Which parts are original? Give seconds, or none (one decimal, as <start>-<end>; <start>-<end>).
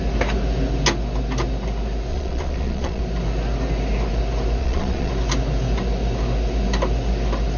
0.0-2.1; 3.0-4.6; 5.1-7.6